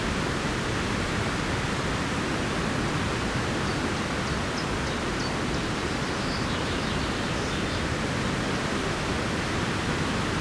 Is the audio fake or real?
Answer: real